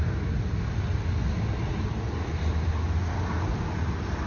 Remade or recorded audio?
recorded